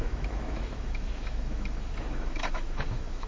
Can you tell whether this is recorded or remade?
remade